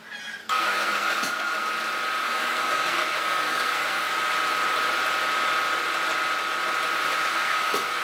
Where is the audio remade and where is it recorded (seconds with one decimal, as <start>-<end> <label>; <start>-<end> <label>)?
0.0-0.4 recorded; 0.4-1.7 remade; 1.7-2.2 recorded; 2.2-4.1 remade; 4.1-7.3 recorded; 7.3-8.0 remade